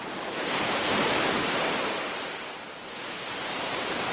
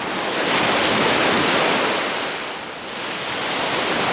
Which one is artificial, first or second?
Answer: first